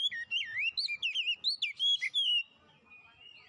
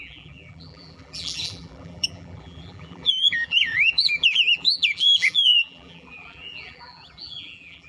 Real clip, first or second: first